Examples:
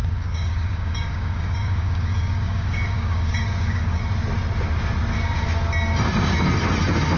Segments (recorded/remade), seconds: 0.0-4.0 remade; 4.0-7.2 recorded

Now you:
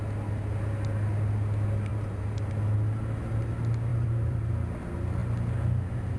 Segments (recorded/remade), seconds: 0.0-1.9 recorded; 1.9-2.5 remade; 2.5-3.9 recorded; 3.9-4.5 remade; 4.5-6.2 recorded

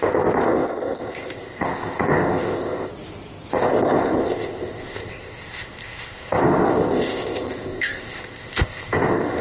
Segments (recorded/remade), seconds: 0.0-2.9 remade; 2.9-3.5 recorded; 3.5-9.4 remade

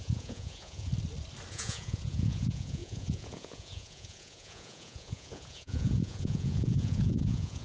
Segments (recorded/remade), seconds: 0.0-0.9 remade; 0.9-1.5 recorded; 1.5-7.6 remade

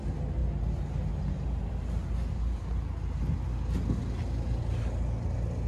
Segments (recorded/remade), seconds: 0.0-5.7 recorded

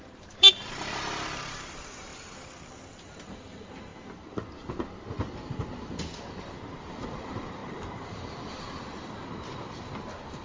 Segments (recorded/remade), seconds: 0.0-2.1 remade; 2.1-2.6 recorded; 2.6-3.9 remade; 3.9-6.4 recorded; 6.4-10.4 remade

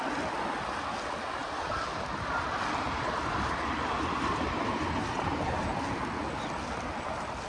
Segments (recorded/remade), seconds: 0.0-1.4 recorded; 1.4-5.7 remade; 5.7-7.5 recorded

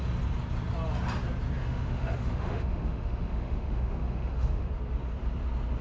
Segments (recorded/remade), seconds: 0.0-1.6 recorded; 1.6-4.7 remade; 4.7-5.8 recorded